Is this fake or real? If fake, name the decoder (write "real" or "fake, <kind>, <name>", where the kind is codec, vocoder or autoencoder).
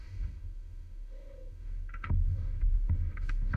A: fake, autoencoder, DAC-VAE